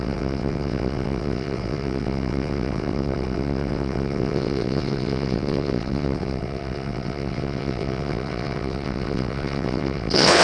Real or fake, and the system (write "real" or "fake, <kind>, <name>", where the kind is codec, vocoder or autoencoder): fake, vocoder, WaveNeXt